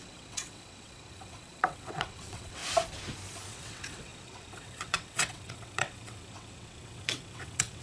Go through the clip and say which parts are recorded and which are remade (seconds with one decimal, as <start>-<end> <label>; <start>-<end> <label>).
0.0-2.6 remade; 2.6-3.5 recorded; 3.5-7.8 remade